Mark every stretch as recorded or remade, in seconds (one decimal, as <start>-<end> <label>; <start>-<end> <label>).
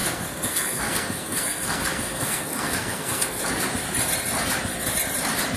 0.0-3.4 remade; 3.4-5.6 recorded